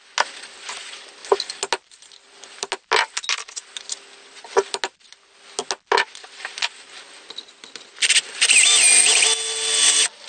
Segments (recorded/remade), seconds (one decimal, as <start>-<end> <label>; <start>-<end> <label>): 0.0-10.3 recorded